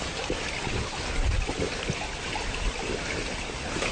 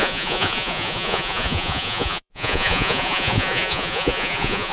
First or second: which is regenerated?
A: second